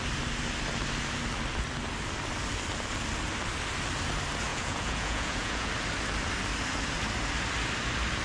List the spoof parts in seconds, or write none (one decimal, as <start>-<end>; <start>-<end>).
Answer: 4.5-5.7